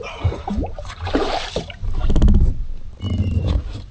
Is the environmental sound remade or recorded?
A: remade